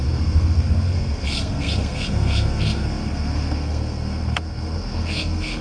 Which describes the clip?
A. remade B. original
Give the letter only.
A